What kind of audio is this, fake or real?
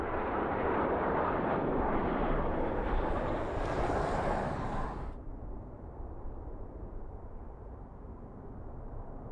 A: fake